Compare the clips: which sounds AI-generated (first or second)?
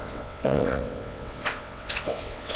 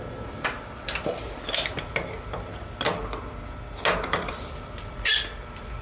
first